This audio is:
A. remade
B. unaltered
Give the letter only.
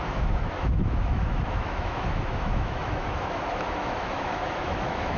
A